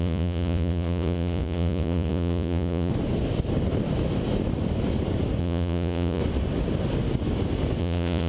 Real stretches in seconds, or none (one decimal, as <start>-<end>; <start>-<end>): 2.9-5.4; 6.2-7.8

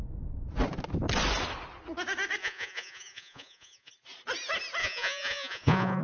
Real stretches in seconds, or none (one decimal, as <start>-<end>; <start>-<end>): 0.0-2.4; 3.9-4.8

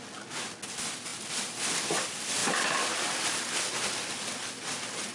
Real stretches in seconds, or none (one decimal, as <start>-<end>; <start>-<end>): 0.0-5.1

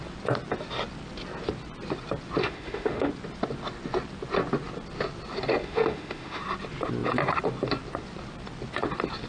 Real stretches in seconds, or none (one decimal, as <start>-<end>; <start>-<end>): 0.0-2.4; 3.1-5.6; 6.4-9.3

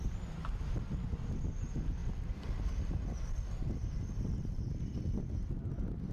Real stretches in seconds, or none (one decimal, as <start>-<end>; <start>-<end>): 0.0-2.0; 2.6-6.1

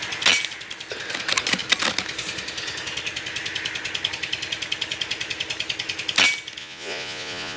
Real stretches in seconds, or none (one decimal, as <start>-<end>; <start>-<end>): 0.0-6.6

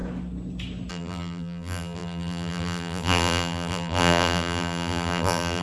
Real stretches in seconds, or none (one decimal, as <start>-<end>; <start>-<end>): 0.0-0.9

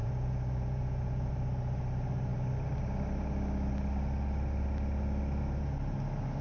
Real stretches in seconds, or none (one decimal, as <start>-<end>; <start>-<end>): 1.3-6.4